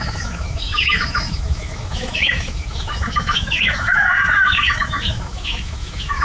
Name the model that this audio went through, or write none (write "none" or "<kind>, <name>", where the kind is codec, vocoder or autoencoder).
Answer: autoencoder, DAC-VAE